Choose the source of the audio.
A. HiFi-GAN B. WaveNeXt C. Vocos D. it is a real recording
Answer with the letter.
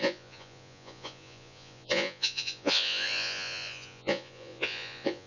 C